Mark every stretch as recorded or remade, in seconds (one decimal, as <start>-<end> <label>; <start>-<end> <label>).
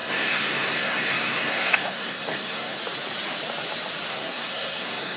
0.0-2.8 remade; 2.8-4.1 recorded; 4.1-5.2 remade